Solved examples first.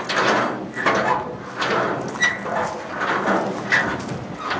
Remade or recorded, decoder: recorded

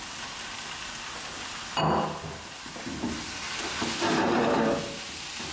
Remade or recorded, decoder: recorded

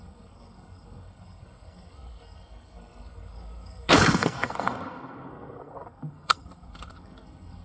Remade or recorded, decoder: remade, codec, SNAC